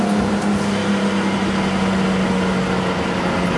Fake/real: real